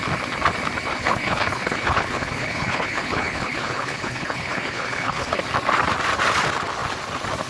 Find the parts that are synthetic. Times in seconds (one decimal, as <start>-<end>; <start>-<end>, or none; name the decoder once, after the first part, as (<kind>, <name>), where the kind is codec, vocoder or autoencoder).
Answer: 0.9-5.4 (codec, HILCodec)